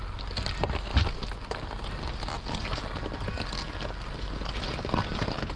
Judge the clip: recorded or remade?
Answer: recorded